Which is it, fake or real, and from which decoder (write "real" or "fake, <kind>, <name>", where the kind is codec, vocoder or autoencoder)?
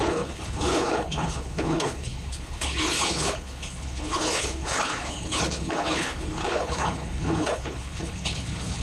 fake, codec, HILCodec